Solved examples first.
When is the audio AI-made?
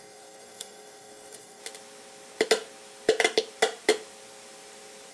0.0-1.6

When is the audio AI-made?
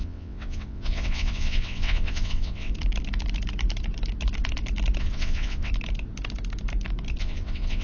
0.0-2.7; 5.0-5.7; 7.2-7.8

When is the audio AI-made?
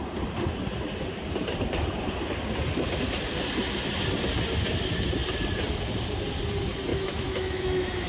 6.9-8.1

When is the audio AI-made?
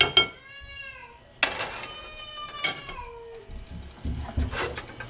none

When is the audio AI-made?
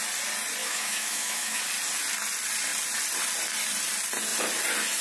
0.6-1.6